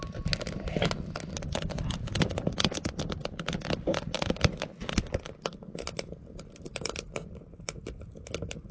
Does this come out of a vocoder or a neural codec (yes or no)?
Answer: no